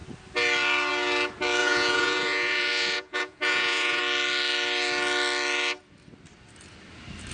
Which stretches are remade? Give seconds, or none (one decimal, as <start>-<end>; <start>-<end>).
1.6-4.0